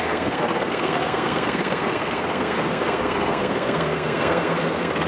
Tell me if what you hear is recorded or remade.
remade